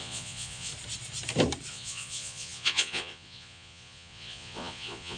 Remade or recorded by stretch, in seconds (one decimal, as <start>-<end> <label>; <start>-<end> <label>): 0.0-0.7 remade; 0.7-1.7 recorded; 1.7-5.2 remade